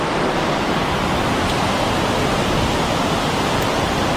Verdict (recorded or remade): recorded